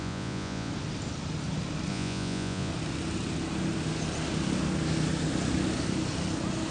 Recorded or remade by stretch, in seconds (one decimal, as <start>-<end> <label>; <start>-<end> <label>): 0.0-0.7 remade; 0.7-1.9 recorded; 1.9-2.7 remade; 2.7-6.7 recorded